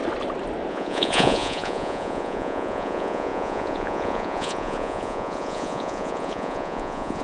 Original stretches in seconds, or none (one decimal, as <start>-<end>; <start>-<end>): 0.0-0.7